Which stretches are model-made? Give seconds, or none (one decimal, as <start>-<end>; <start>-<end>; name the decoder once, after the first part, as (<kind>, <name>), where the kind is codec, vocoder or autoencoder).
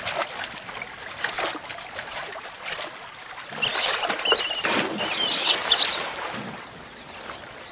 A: 2.1-2.8 (vocoder, Vocos)